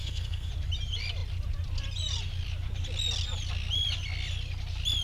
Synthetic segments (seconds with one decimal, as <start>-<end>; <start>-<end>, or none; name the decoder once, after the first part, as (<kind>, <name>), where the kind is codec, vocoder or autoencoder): 0.0-0.5 (codec, SNAC)

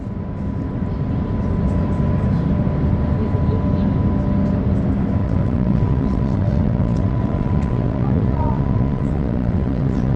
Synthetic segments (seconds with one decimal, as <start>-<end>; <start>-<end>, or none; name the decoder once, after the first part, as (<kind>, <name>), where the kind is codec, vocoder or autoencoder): 5.2-10.2 (vocoder, WaveNeXt)

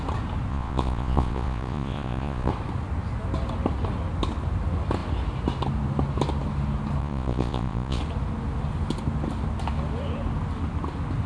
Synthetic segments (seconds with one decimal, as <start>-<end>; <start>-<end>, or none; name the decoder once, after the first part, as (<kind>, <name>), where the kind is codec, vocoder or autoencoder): 0.5-2.5 (vocoder, Vocos); 7.0-8.0

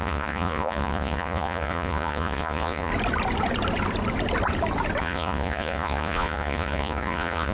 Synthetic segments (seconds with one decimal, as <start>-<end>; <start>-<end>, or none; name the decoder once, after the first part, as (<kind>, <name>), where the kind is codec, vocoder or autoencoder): 0.0-2.9 (vocoder, Vocos); 5.0-7.5

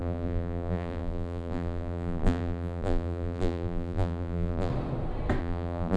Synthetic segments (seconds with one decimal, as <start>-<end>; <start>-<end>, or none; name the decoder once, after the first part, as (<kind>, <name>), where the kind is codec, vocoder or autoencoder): 0.0-4.7 (vocoder, BigVGAN v2); 5.4-6.0

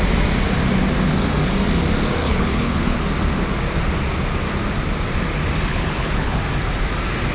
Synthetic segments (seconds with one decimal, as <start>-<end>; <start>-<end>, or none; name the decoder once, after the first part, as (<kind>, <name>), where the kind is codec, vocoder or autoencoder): 2.2-3.0 (codec, HILCodec); 5.7-6.4